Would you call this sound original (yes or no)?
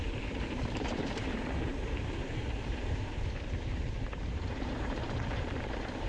no